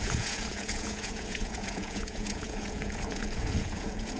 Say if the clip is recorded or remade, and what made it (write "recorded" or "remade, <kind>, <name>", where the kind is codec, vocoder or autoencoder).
remade, vocoder, Vocos